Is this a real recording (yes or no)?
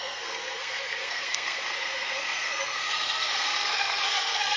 no